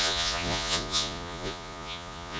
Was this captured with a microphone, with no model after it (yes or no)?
no